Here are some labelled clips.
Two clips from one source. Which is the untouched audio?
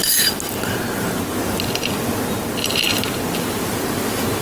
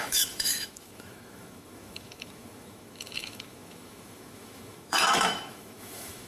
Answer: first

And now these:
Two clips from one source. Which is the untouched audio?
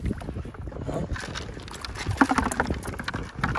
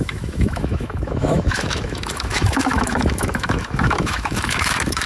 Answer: first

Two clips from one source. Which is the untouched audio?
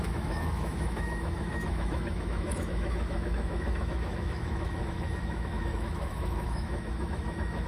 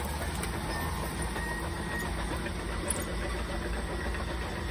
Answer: second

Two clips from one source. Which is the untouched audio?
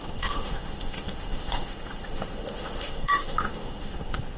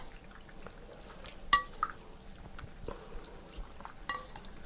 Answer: second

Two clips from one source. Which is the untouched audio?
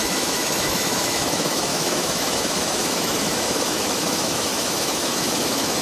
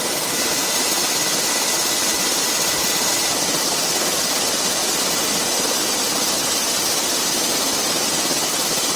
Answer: second